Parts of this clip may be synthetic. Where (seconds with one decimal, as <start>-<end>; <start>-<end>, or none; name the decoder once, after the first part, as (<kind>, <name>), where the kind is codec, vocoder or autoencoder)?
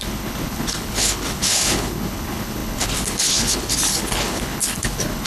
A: 0.0-5.3 (codec, HILCodec)